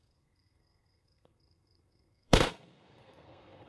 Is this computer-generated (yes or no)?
yes